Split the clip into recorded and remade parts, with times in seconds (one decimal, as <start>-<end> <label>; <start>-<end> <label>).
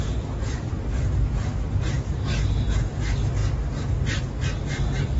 0.0-5.2 recorded